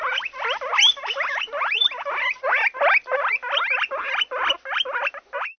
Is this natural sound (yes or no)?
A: yes